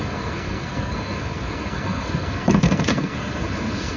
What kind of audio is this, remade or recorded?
remade